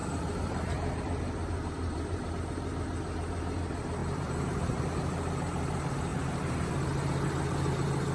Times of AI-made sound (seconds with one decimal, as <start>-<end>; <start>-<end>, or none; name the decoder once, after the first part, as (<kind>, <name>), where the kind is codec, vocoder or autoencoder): 0.0-2.3 (vocoder, BigVGAN v2); 4.0-4.8; 6.1-6.7